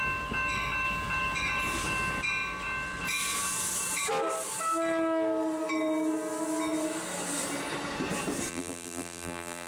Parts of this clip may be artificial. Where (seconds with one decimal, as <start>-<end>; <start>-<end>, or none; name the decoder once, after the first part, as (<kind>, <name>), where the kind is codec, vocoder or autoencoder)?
8.5-9.7 (vocoder, BigVGAN v2)